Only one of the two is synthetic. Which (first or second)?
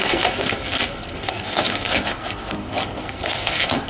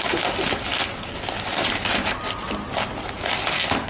first